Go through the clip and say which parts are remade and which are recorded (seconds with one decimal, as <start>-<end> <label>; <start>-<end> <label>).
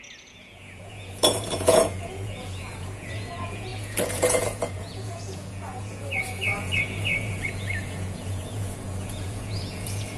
0.0-10.2 remade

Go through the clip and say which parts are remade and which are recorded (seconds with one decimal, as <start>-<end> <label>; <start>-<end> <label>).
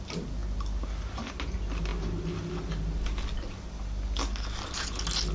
0.0-5.3 recorded